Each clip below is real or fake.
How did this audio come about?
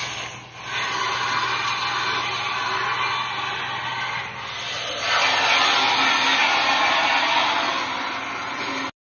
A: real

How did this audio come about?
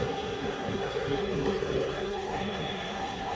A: fake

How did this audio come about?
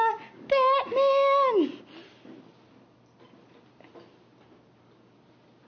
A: real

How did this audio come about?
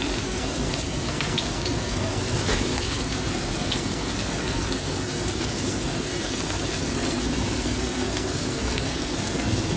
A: fake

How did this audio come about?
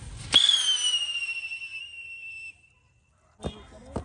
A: real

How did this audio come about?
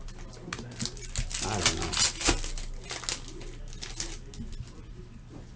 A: real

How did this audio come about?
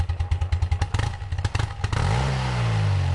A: real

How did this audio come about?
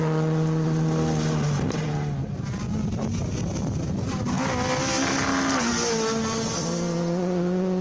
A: real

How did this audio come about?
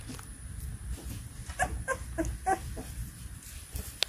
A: real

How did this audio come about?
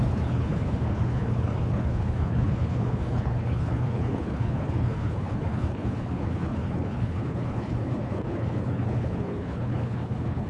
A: fake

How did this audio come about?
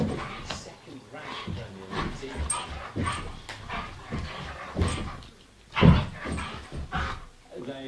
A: real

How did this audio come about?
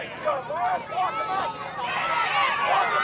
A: real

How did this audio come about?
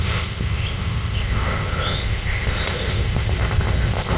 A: fake